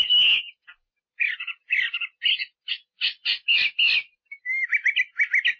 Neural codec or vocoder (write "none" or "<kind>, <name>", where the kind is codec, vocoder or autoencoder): none